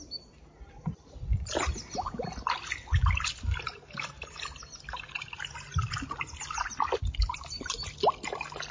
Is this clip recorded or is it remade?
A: recorded